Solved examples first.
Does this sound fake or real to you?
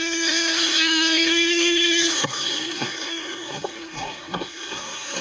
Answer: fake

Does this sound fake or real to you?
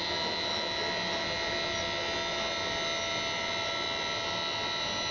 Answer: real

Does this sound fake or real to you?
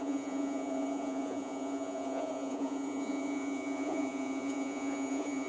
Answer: fake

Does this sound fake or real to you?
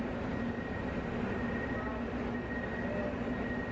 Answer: real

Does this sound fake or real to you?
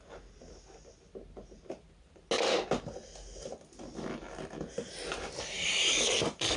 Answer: real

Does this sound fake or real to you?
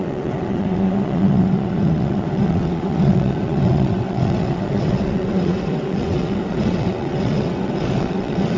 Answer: fake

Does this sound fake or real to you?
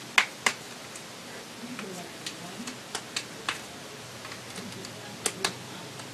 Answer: real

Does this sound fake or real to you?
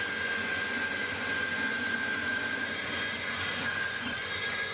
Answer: fake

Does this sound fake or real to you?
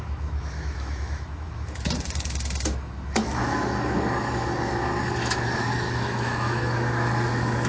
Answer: fake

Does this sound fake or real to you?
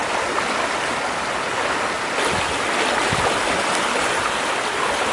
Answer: real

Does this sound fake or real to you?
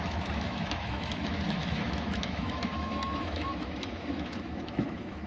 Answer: fake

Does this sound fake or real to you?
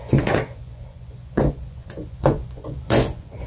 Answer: fake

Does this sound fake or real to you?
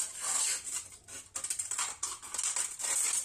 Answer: real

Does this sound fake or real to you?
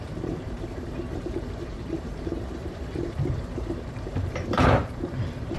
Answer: fake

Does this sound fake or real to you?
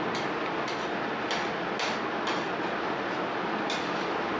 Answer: real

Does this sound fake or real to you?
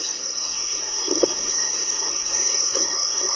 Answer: fake